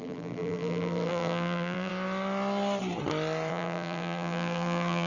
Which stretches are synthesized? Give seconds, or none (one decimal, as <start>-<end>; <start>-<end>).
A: 0.0-1.9; 3.5-5.1